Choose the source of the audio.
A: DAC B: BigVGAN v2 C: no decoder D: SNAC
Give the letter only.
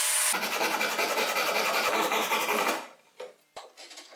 C